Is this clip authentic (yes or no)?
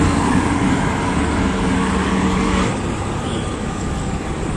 no